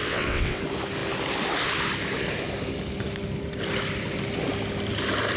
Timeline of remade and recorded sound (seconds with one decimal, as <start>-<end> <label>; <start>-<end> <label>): 0.0-0.6 remade; 0.6-5.4 recorded